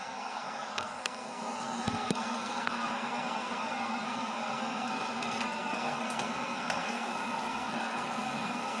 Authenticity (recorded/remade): remade